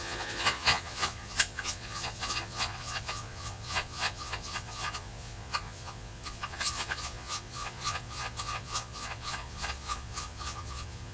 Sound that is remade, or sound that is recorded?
remade